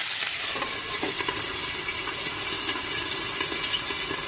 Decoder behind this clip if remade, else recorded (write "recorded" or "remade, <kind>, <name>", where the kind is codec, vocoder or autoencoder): recorded